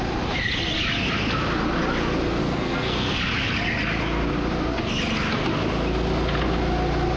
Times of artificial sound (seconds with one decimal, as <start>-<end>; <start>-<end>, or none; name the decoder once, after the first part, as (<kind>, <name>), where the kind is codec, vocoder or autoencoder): 2.4-3.2 (codec, SNAC)